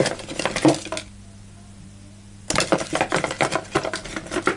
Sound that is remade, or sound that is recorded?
recorded